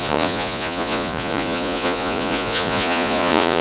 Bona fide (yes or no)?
no